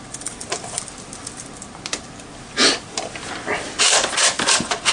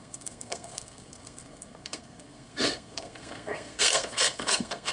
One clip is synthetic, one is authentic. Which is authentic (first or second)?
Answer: first